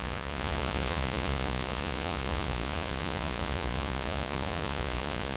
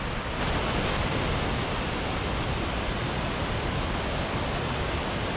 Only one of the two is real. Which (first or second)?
second